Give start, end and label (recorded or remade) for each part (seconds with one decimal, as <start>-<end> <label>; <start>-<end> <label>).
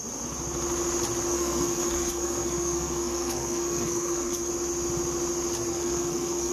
0.0-1.3 recorded; 1.3-4.5 remade; 4.5-5.7 recorded; 5.7-6.5 remade